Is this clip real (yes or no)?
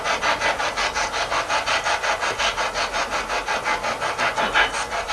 yes